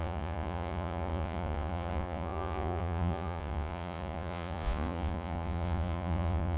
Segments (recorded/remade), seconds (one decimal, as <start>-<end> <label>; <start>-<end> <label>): 0.0-6.6 remade